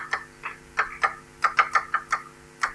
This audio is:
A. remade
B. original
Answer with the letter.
B